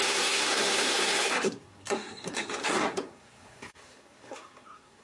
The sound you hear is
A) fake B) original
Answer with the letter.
A